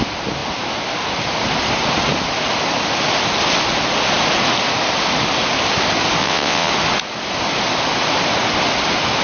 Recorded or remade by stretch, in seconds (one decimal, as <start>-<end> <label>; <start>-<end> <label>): 0.0-6.2 recorded; 6.2-6.7 remade; 6.7-9.2 recorded